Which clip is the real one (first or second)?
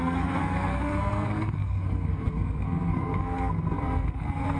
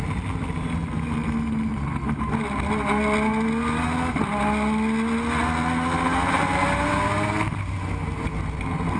second